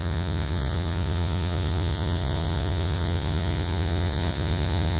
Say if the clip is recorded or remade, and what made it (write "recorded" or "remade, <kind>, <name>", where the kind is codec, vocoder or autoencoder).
remade, vocoder, Vocos